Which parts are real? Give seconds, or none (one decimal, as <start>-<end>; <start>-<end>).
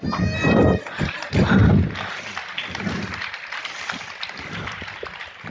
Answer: 0.0-5.5